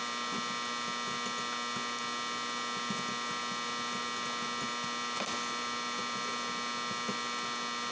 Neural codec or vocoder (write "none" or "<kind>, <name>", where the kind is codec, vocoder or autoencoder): none